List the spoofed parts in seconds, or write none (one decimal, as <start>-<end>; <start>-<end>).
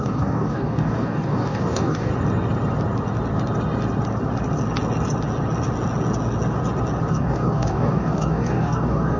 0.0-2.1; 7.1-9.2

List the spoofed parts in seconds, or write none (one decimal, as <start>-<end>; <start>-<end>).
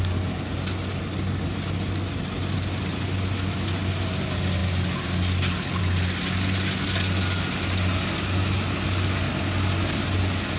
none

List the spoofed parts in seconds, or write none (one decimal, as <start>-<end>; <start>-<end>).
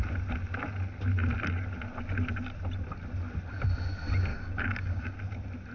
4.3-5.2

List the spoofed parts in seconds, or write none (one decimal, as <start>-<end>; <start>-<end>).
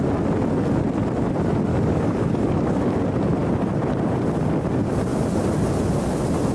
1.7-2.9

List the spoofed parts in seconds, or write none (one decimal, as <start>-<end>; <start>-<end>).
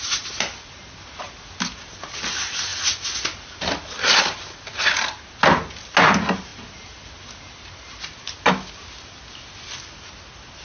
none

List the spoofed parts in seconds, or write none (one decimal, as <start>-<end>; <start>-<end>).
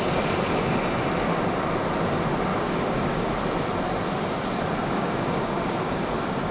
2.5-3.3; 4.8-6.1